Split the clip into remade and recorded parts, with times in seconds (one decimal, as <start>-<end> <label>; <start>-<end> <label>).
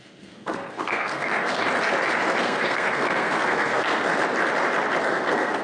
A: 0.0-1.6 remade; 1.6-2.4 recorded; 2.4-4.1 remade; 4.1-5.0 recorded; 5.0-5.6 remade